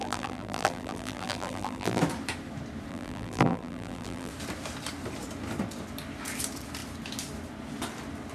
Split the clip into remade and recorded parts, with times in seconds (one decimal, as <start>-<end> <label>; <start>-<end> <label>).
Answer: 0.0-2.0 remade; 2.0-2.9 recorded; 2.9-4.3 remade; 4.3-8.3 recorded